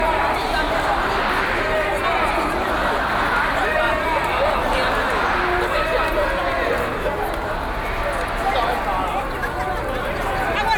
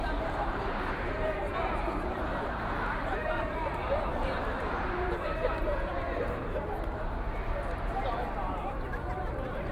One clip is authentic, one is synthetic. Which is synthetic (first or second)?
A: second